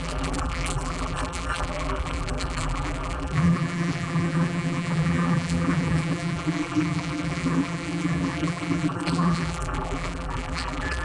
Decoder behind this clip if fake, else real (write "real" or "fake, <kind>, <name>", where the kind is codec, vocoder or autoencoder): fake, vocoder, BigVGAN v2